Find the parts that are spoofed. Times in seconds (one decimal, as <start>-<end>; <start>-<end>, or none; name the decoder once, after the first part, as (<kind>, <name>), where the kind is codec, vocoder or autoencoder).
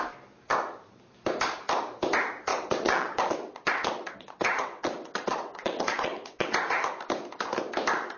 2.5-6.7 (vocoder, WaveNeXt)